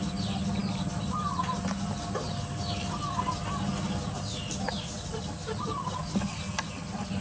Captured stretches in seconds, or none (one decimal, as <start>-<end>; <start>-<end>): 0.0-7.2